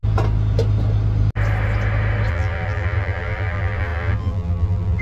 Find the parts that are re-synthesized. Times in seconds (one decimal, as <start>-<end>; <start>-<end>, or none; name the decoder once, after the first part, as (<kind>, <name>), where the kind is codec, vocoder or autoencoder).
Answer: 2.3-5.0 (vocoder, BigVGAN v2)